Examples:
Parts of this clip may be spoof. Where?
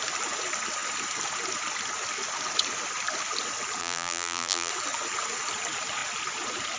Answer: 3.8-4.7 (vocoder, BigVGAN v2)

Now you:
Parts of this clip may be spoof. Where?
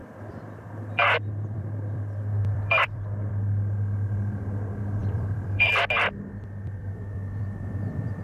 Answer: 0.0-3.3 (vocoder, BigVGAN v2); 5.0-5.7; 6.8-8.2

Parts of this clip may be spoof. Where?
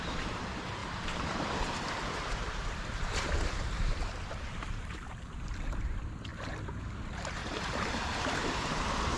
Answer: 0.0-9.2 (vocoder, BigVGAN v2)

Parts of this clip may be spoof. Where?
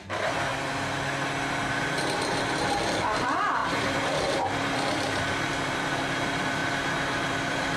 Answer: 0.0-0.5 (vocoder, BigVGAN v2); 2.8-6.6; 7.3-7.8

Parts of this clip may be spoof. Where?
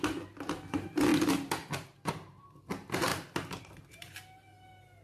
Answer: none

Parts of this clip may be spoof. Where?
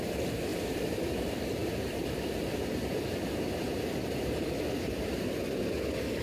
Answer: 0.5-1.0 (vocoder, BigVGAN v2); 1.6-5.0